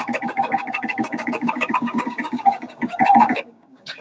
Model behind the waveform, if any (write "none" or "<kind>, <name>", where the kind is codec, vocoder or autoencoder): codec, DAC